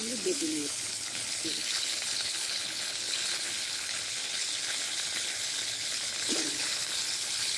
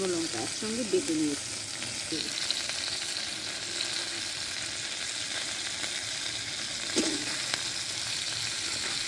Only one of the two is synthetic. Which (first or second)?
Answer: first